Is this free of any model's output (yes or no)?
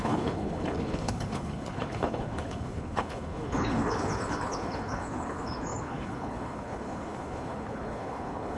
no